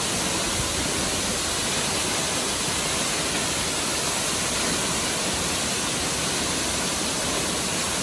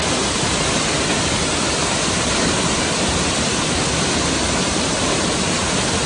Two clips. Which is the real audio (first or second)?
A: first